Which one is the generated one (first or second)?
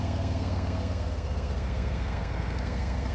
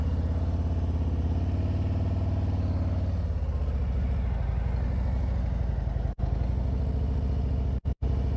first